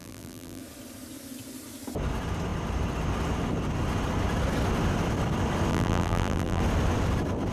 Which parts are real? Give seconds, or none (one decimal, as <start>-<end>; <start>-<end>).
0.6-5.7; 6.6-7.5